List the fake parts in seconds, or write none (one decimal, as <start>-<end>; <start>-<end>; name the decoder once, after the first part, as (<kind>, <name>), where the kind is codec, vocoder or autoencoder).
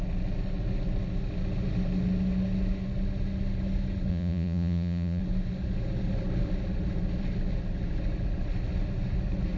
4.1-5.2 (vocoder, Vocos)